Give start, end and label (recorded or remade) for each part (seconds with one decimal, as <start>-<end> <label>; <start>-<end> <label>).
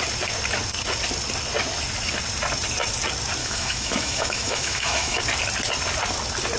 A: 0.0-3.4 recorded; 3.4-5.2 remade; 5.2-6.6 recorded